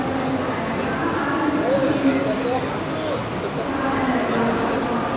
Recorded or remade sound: recorded